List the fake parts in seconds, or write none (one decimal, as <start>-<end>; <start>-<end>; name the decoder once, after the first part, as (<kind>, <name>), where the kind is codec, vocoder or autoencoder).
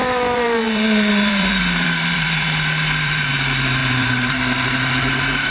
0.0-3.3 (vocoder, BigVGAN v2); 3.8-4.4